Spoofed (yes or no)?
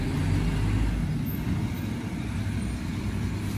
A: no